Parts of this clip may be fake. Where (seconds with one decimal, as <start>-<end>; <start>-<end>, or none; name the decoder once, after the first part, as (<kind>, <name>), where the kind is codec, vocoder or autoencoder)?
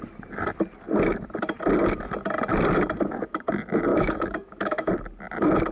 3.9-4.9 (autoencoder, DAC-VAE)